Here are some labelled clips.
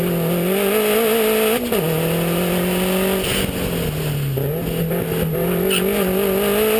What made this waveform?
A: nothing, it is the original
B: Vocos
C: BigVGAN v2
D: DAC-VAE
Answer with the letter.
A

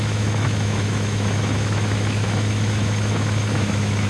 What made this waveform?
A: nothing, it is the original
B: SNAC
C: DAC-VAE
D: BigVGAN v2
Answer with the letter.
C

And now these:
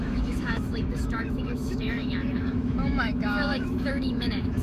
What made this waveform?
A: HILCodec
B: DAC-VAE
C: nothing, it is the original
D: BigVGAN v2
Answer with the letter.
B